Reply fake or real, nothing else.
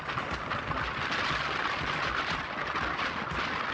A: real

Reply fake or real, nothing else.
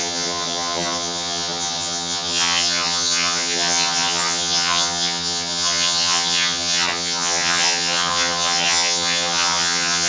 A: fake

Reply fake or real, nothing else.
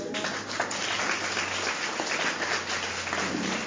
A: real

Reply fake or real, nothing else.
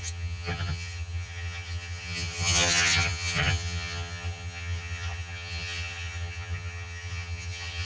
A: fake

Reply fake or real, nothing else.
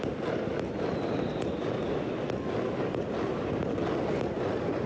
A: real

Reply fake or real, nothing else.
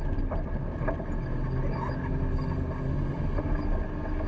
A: real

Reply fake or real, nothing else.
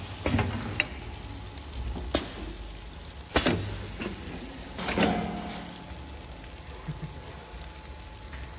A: real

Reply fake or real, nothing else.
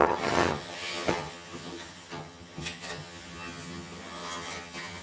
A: fake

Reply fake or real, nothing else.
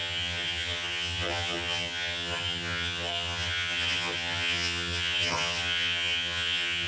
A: fake